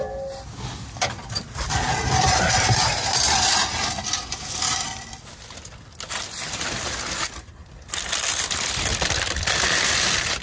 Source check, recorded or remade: recorded